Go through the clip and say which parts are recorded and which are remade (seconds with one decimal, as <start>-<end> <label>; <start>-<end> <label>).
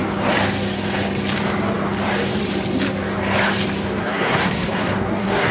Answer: 0.0-4.0 recorded; 4.0-5.5 remade